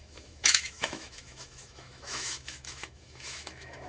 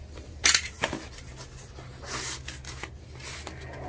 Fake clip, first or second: first